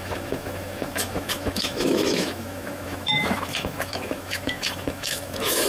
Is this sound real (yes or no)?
no